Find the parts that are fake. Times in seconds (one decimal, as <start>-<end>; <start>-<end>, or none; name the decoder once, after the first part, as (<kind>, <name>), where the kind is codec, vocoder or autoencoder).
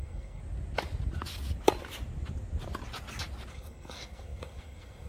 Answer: 0.0-0.4 (codec, SNAC); 3.5-5.1